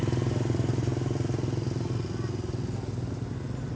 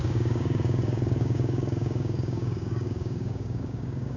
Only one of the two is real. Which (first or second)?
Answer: first